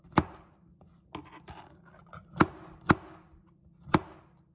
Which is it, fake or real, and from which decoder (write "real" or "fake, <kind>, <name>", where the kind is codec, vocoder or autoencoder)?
real